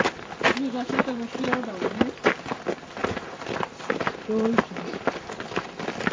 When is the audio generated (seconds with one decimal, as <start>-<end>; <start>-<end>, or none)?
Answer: none